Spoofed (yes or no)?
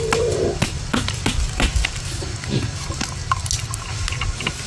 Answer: no